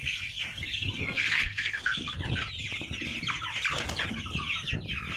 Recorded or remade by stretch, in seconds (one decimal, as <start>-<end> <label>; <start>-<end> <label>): 0.0-2.1 remade; 2.1-5.2 recorded